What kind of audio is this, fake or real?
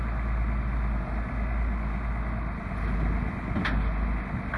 real